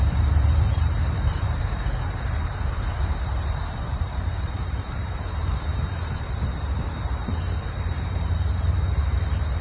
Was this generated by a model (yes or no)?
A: yes